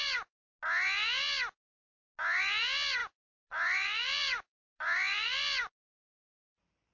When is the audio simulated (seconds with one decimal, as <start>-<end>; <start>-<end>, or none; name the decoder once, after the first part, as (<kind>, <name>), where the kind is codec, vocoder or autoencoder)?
3.0-6.9 (vocoder, BigVGAN v2)